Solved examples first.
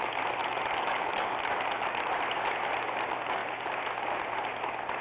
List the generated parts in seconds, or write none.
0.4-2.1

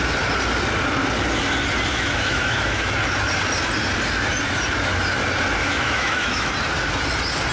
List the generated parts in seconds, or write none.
1.9-2.9; 5.6-6.5

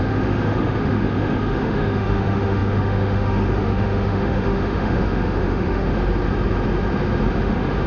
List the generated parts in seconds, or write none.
0.0-6.0; 7.3-7.9

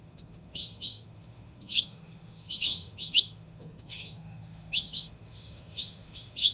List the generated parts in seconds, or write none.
0.0-6.5

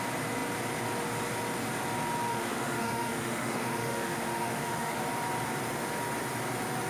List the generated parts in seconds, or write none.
2.3-5.0

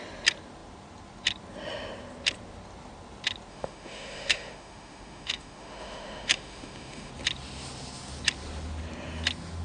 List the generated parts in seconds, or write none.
3.5-7.1

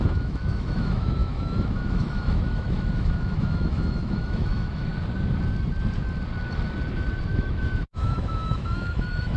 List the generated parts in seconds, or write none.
0.0-4.9; 7.3-9.4